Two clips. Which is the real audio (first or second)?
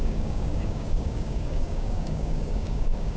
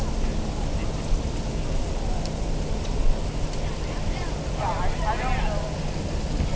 second